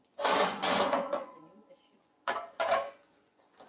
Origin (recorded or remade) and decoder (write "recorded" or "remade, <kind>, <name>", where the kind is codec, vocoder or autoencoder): remade, vocoder, Vocos